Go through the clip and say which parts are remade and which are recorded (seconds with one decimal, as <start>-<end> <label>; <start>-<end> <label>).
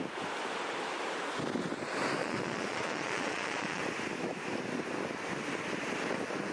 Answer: 0.0-2.2 recorded; 2.2-3.8 remade; 3.8-6.5 recorded